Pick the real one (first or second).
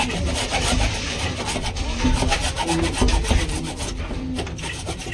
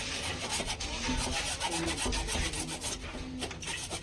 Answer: second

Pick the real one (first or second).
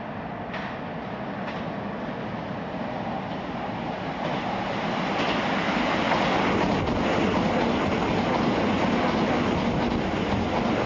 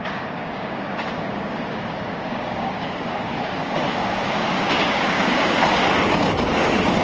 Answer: first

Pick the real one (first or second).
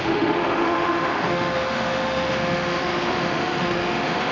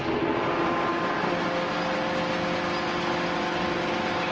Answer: second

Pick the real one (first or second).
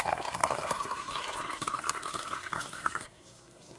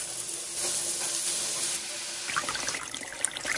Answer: second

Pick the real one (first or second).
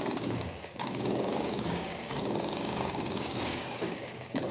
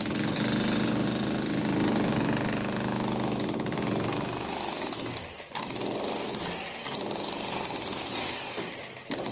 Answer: second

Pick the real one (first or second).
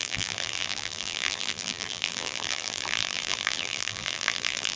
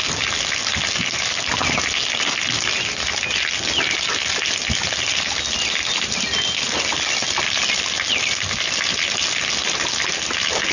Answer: second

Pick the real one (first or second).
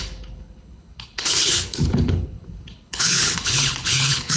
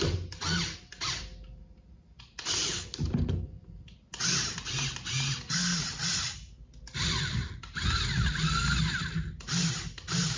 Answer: second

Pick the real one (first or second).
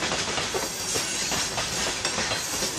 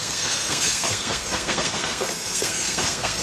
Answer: first